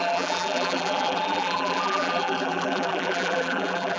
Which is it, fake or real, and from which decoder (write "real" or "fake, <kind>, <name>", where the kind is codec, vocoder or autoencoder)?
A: fake, vocoder, BigVGAN v2